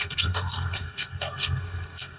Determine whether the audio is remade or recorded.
remade